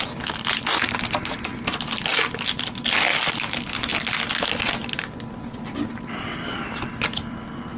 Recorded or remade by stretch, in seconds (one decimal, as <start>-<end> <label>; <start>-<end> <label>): 0.0-7.8 recorded